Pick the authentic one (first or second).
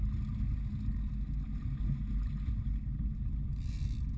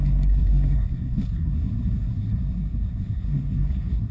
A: first